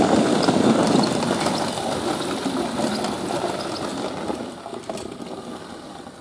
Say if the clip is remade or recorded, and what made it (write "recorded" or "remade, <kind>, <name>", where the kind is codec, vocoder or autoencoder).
recorded